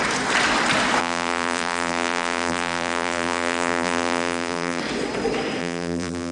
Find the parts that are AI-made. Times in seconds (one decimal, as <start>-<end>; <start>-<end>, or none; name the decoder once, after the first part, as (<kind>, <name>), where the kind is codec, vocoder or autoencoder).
1.0-4.8 (vocoder, BigVGAN v2); 5.6-6.3